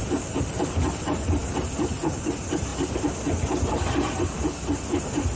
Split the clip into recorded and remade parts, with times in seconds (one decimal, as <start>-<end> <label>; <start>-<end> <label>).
0.0-5.4 recorded